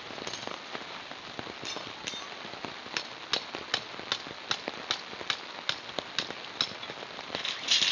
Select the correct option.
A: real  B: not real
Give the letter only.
A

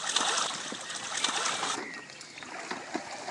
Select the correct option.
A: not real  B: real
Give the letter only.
B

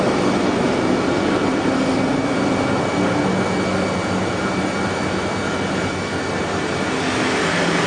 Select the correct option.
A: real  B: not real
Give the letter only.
A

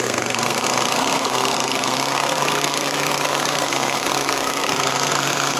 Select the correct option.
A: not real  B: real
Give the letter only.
A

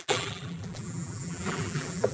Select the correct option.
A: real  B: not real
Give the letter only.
B